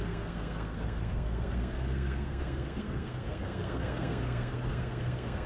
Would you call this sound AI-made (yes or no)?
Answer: yes